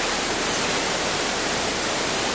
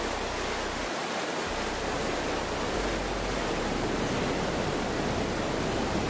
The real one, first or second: second